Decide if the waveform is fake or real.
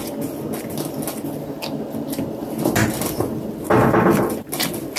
real